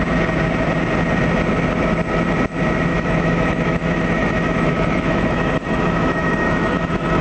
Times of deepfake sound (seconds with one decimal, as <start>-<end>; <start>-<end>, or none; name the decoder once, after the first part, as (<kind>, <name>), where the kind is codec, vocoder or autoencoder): 2.9-7.2 (autoencoder, DAC-VAE)

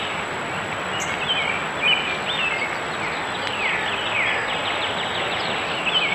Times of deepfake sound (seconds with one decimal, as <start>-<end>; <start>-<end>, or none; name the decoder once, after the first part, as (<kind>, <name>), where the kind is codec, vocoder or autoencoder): none

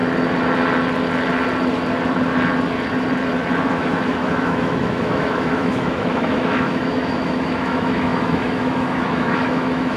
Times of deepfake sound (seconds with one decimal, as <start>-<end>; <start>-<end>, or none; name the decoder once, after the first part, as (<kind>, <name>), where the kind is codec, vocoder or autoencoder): 3.7-10.0 (autoencoder, DAC-VAE)

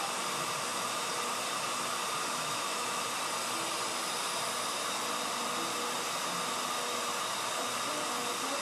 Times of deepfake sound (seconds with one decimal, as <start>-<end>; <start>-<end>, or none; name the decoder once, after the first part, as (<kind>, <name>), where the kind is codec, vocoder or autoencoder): 2.3-3.1 (autoencoder, DAC-VAE)

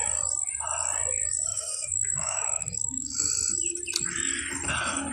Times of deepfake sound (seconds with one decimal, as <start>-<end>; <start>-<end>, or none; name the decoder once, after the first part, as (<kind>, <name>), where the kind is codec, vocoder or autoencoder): 1.5-3.3 (autoencoder, DAC-VAE)

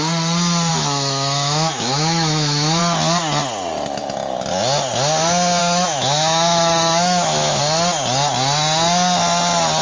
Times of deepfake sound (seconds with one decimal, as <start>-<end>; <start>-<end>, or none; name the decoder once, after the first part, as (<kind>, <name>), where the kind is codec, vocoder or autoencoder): 0.7-2.8 (autoencoder, DAC-VAE); 5.6-7.6